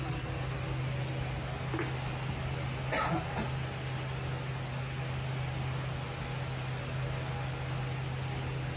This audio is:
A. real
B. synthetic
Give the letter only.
A